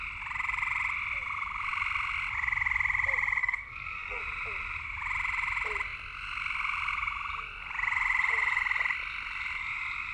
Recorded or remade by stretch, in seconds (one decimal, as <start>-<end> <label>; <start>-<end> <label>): 0.0-3.4 recorded; 3.4-4.2 remade; 4.2-10.1 recorded